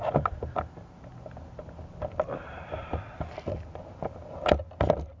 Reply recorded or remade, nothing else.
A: recorded